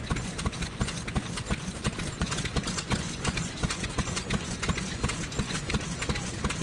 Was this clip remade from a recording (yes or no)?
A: yes